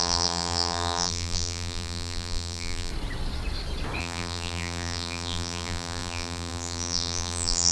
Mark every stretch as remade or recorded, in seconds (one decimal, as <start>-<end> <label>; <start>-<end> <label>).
0.0-2.9 remade; 2.9-4.0 recorded; 4.0-7.7 remade